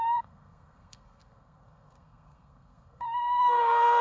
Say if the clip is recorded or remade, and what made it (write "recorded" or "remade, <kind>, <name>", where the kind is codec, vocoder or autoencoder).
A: remade, codec, SNAC